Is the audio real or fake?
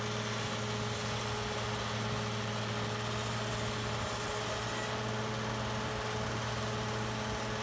real